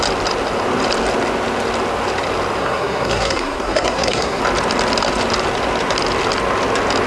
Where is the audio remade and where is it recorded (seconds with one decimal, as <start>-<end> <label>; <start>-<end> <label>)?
0.0-2.6 recorded; 2.6-4.4 remade; 4.4-7.1 recorded